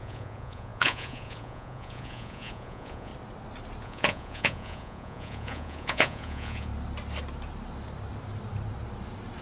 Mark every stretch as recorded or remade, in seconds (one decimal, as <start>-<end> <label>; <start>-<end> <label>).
0.0-3.1 remade; 3.1-3.8 recorded; 3.8-6.7 remade; 6.7-9.4 recorded